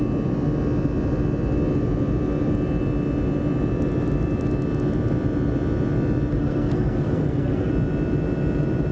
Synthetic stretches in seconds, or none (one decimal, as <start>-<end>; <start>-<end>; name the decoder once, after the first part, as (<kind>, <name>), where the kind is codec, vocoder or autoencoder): 6.3-7.7 (codec, SNAC)